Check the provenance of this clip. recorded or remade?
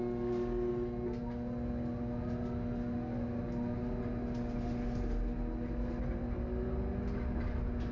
recorded